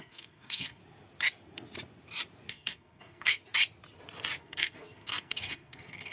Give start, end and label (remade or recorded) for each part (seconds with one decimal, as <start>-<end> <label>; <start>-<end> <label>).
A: 0.0-0.8 remade; 0.8-2.5 recorded; 2.5-3.4 remade; 3.4-4.4 recorded; 4.4-6.1 remade